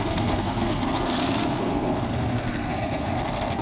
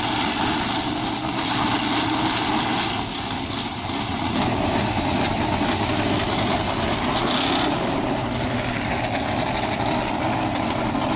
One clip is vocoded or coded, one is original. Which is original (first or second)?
second